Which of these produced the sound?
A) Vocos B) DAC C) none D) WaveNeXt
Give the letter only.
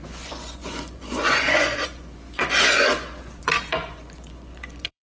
A